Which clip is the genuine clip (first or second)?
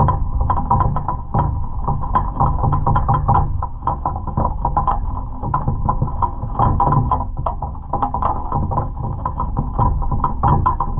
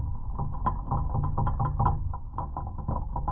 second